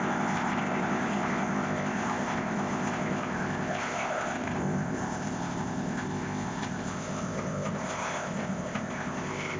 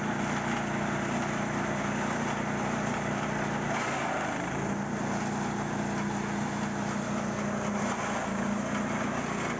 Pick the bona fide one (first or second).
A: second